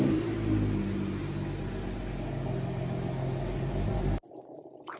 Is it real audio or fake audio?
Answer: real